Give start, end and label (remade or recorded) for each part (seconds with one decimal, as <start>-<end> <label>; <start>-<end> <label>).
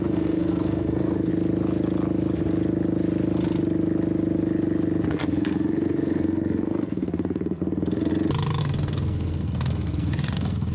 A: 0.0-1.3 remade; 1.3-5.1 recorded; 5.1-8.1 remade; 8.1-8.6 recorded; 8.6-10.7 remade